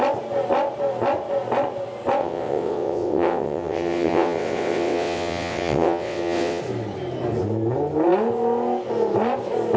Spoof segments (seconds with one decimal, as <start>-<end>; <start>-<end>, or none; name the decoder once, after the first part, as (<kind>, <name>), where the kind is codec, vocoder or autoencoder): 2.2-6.6 (vocoder, WaveNeXt)